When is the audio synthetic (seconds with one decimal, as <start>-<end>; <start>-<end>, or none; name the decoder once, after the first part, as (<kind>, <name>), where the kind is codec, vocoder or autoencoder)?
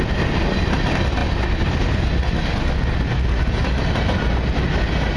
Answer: none